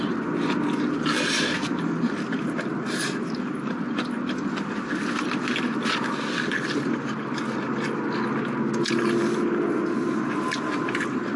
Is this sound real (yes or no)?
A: yes